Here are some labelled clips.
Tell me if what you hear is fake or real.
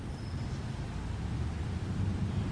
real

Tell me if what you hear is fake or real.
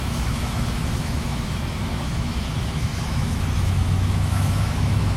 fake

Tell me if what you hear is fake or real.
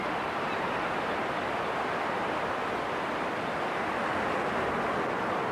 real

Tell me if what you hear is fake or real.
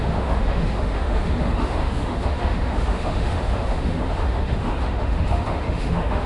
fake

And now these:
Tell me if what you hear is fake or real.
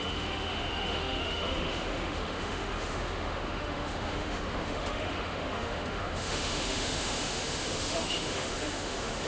fake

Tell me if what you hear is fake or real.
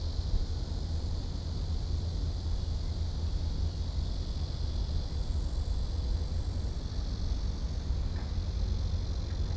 real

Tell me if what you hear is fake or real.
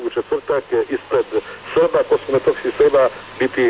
real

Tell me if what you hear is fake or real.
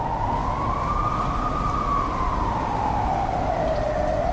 real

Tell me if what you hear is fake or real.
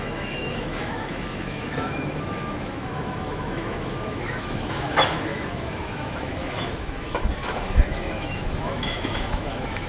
fake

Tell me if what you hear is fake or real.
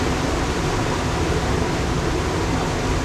real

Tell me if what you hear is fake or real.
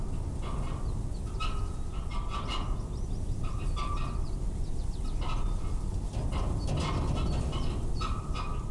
real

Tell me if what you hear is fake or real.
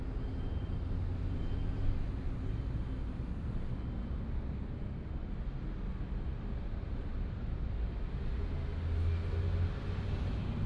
real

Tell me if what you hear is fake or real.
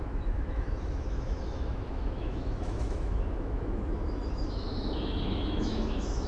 fake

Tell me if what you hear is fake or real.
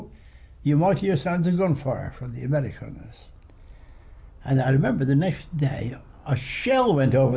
real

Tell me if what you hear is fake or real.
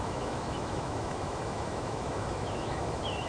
fake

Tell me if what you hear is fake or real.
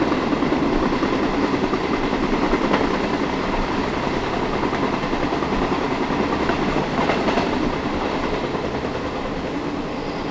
real